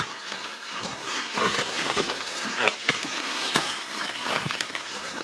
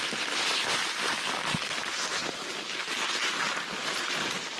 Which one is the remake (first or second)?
first